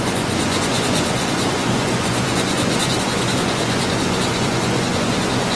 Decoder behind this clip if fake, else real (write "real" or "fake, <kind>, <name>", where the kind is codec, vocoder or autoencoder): fake, vocoder, Vocos